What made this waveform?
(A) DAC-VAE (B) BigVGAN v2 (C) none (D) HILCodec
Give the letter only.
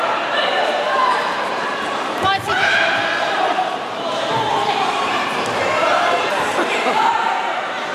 B